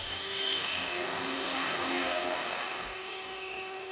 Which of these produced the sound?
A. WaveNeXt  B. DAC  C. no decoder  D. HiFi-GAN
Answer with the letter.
B